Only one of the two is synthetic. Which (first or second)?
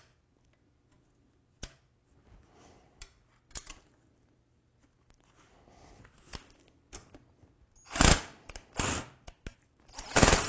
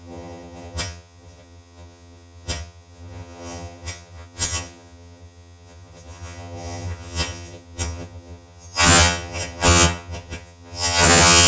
second